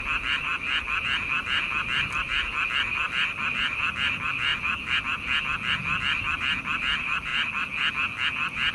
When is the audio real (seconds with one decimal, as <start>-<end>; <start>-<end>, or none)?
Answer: 0.5-1.0; 4.5-6.0; 7.3-8.7